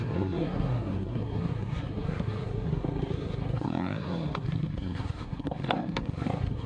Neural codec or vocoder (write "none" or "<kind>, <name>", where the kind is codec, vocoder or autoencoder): codec, SNAC